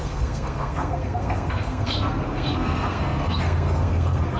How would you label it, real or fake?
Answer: fake